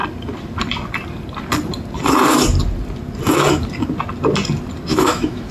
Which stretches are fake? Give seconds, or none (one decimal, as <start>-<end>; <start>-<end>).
4.9-5.5